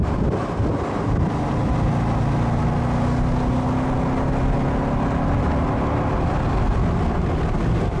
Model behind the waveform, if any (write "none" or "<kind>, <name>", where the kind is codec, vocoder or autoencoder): none